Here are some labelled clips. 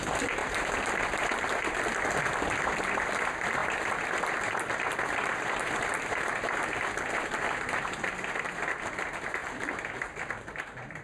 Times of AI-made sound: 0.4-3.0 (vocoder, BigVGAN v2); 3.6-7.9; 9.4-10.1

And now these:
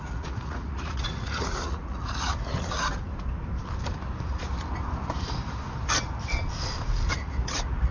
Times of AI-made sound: 0.0-3.1 (vocoder, Vocos); 7.1-7.9

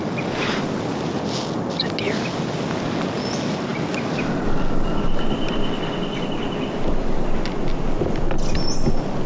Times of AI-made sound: none